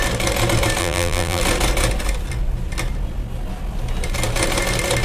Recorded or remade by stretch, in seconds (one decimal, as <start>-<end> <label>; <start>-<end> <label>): 0.0-0.8 recorded; 0.8-1.4 remade; 1.4-5.0 recorded